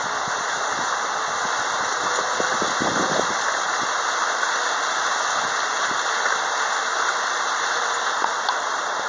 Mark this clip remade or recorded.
recorded